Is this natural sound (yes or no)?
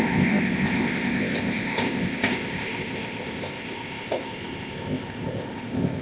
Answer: no